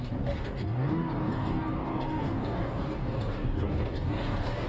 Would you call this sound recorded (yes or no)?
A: no